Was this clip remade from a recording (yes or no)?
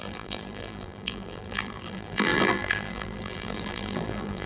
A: yes